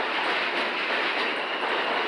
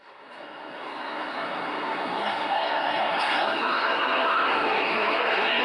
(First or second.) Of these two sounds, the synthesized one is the second